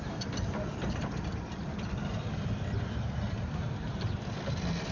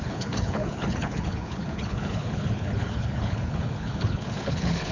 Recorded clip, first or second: first